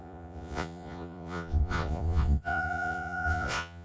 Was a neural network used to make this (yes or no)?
yes